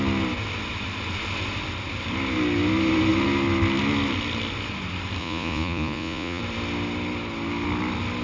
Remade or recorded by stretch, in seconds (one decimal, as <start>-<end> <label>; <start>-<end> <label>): 0.0-5.2 recorded; 5.2-6.4 remade; 6.4-8.2 recorded